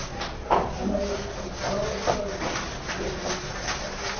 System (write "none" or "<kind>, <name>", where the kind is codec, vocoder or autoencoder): none